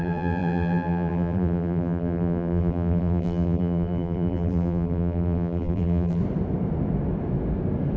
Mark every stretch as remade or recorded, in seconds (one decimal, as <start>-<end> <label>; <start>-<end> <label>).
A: 0.0-6.2 remade; 6.2-8.0 recorded